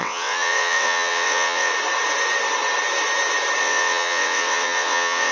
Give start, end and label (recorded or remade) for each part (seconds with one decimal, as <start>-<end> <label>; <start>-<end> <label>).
0.0-1.7 remade; 1.7-3.6 recorded; 3.6-5.3 remade